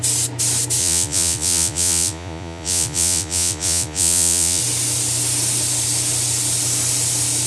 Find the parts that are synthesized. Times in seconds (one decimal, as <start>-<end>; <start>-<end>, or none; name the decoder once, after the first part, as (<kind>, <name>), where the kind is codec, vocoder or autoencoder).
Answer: 0.8-4.6 (vocoder, Vocos)